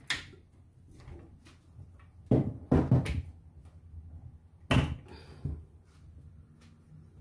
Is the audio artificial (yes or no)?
no